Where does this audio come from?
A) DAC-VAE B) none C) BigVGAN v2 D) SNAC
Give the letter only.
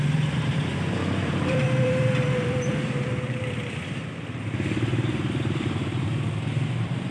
C